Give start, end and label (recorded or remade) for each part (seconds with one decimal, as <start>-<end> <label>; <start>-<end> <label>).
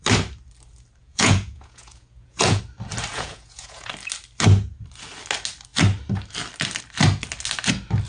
0.0-1.0 recorded; 1.0-2.6 remade; 2.6-3.1 recorded; 3.1-3.9 remade; 3.9-8.1 recorded